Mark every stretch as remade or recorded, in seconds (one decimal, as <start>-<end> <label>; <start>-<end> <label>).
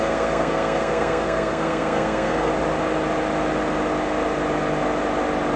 0.0-2.5 remade; 2.5-5.6 recorded